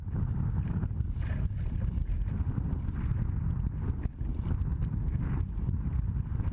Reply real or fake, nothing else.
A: real